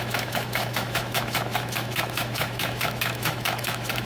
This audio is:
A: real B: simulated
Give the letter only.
B